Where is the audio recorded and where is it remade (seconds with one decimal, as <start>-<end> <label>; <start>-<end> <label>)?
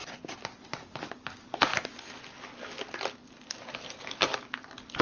0.0-5.0 recorded